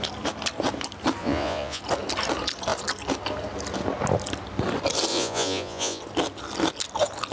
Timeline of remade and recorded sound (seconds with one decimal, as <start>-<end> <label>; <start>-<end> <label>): 0.0-1.2 recorded; 1.2-1.8 remade; 1.8-5.1 recorded; 5.1-6.0 remade; 6.0-7.3 recorded